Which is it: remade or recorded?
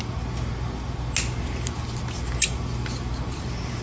recorded